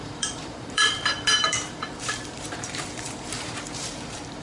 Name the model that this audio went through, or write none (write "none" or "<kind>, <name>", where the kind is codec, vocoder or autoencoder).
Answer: vocoder, BigVGAN v2